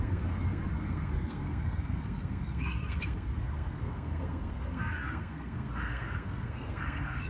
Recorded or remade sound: remade